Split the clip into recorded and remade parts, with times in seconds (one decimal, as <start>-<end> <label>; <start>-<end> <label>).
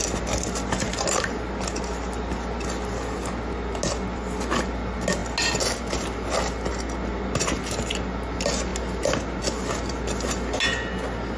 0.0-11.4 recorded